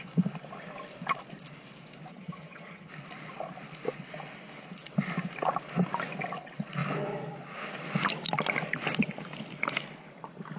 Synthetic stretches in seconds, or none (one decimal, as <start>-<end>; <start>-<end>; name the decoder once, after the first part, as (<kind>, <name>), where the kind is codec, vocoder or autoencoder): 2.1-2.9 (vocoder, HiFi-GAN)

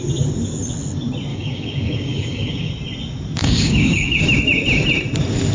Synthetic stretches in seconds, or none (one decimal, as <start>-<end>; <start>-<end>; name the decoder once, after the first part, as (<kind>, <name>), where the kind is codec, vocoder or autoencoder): 1.3-2.7 (codec, DAC); 3.4-4.2

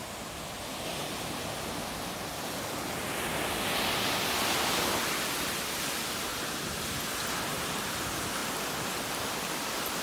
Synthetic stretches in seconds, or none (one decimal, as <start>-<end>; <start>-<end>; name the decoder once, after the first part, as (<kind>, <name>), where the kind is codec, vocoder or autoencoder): 0.9-1.5 (vocoder, BigVGAN v2); 6.3-6.9

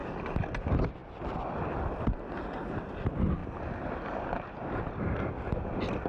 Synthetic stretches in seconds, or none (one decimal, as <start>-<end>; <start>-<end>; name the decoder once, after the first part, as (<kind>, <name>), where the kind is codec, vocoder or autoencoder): none

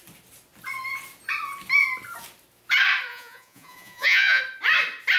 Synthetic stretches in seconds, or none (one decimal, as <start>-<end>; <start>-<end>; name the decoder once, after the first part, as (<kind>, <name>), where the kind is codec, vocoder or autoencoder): 3.1-4.4 (vocoder, Vocos)

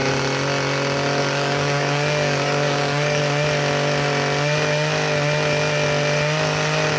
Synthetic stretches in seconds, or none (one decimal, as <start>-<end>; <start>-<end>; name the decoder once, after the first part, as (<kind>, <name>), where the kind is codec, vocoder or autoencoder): 1.2-3.2 (codec, DAC)